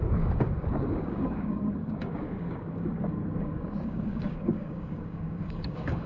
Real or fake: fake